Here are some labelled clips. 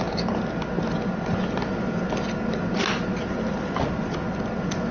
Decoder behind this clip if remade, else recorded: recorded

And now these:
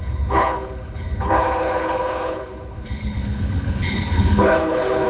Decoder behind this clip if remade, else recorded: remade, codec, HILCodec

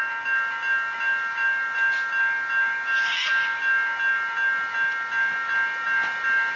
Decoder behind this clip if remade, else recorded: recorded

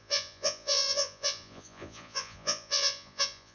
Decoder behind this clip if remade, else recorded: remade, vocoder, Vocos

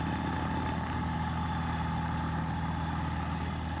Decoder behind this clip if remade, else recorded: recorded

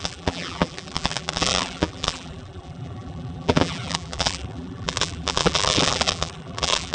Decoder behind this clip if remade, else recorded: remade, vocoder, BigVGAN v2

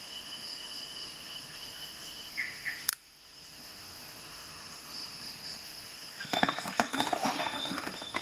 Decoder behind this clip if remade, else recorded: remade, autoencoder, DAC-VAE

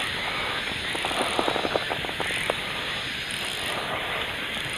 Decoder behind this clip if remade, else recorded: recorded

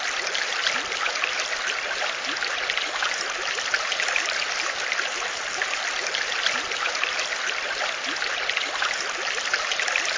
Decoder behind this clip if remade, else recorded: remade, vocoder, BigVGAN v2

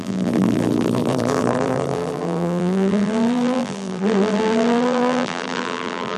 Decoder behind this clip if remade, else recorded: remade, vocoder, BigVGAN v2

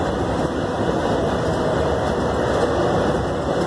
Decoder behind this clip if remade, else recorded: recorded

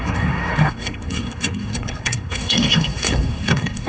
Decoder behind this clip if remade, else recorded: remade, codec, SNAC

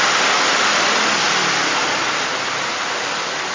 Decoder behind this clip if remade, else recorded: recorded